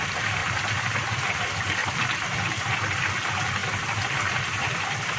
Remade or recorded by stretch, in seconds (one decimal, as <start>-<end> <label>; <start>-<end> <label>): 0.0-5.2 remade